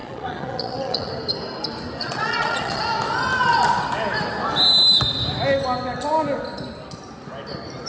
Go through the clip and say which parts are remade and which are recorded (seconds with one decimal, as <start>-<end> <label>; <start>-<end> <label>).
0.0-1.1 remade; 1.1-2.0 recorded; 2.0-2.8 remade; 2.8-7.9 recorded